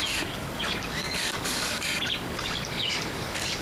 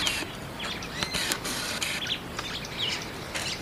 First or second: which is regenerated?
first